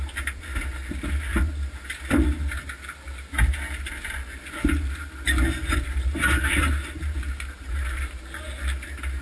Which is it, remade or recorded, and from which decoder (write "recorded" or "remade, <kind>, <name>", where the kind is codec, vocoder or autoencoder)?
recorded